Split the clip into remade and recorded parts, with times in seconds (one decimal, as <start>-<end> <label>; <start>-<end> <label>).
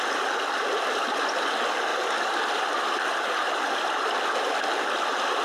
0.0-5.4 recorded